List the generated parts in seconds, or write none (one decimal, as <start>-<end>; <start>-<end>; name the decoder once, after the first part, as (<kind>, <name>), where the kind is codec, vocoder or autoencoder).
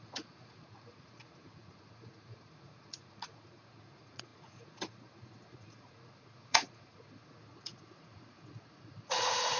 0.0-9.6 (vocoder, Vocos)